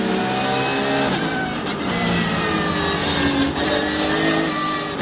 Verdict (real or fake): real